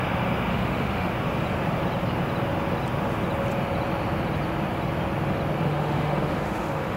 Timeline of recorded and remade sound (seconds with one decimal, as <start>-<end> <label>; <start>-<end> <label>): 0.0-0.5 recorded; 0.5-1.1 remade; 1.1-5.6 recorded; 5.6-7.0 remade